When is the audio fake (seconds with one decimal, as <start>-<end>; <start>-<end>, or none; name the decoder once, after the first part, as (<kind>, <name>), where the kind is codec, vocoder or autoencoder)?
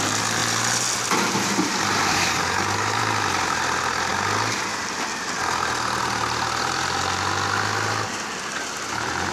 2.1-3.0 (codec, DAC)